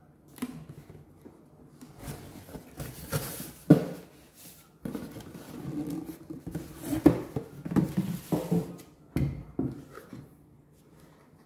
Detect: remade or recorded recorded